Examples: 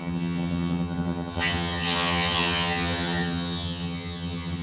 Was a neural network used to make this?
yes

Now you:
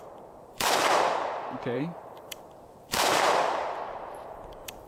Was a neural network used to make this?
yes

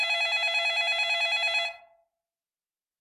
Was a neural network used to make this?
no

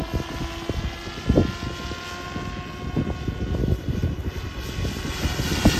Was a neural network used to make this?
no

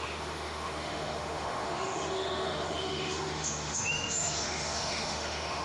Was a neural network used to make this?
yes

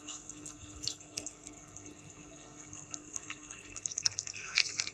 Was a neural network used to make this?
yes